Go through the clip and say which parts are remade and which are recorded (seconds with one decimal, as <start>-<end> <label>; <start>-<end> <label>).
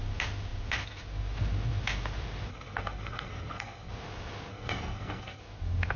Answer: 0.0-2.5 recorded; 2.5-3.9 remade; 3.9-4.5 recorded; 4.5-5.4 remade; 5.4-6.0 recorded